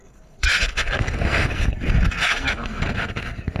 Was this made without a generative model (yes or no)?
no